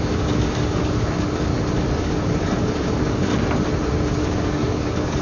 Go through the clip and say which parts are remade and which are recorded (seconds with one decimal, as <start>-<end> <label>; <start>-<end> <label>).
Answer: 0.0-1.5 remade; 1.5-2.0 recorded; 2.0-3.3 remade; 3.3-4.0 recorded; 4.0-5.2 remade